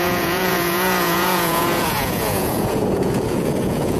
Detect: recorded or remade remade